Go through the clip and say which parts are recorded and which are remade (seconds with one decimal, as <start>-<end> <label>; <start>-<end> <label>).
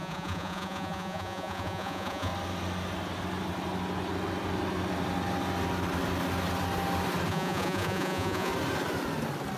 0.0-2.3 remade; 2.3-7.3 recorded; 7.3-8.5 remade; 8.5-9.6 recorded